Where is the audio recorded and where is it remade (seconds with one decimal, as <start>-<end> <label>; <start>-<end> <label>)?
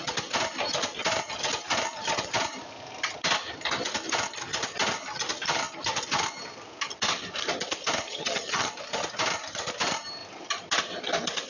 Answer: 0.0-8.1 recorded; 8.1-8.7 remade; 8.7-11.5 recorded